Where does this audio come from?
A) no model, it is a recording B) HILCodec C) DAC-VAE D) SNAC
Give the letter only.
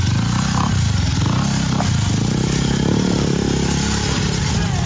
A